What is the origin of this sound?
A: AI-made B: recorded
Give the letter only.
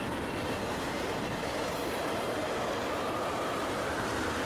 A